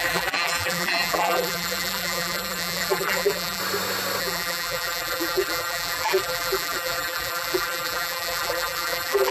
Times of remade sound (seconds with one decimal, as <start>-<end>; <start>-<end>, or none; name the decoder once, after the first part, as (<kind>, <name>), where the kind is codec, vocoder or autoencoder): 0.0-3.6 (vocoder, BigVGAN v2); 4.2-9.3